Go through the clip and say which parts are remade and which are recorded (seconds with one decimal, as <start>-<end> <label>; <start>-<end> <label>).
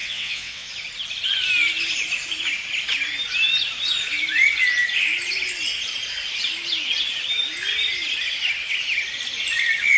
0.0-0.7 remade; 0.7-10.0 recorded